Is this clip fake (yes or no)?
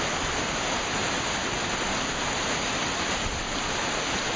no